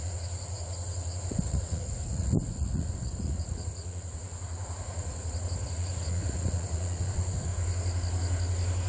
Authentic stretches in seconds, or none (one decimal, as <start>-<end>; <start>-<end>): 7.5-8.9